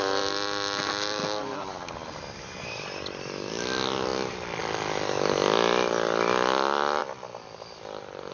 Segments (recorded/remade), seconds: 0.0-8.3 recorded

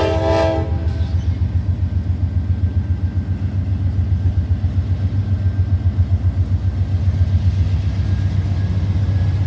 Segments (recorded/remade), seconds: 0.0-9.5 recorded

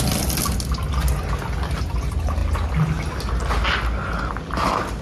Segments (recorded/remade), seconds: 0.0-5.0 recorded

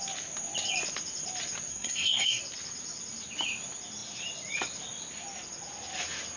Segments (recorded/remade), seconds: 0.0-1.7 recorded; 1.7-2.4 remade; 2.4-6.4 recorded

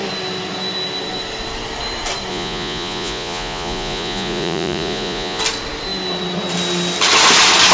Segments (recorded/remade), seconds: 0.0-2.3 recorded; 2.3-5.4 remade; 5.4-7.7 recorded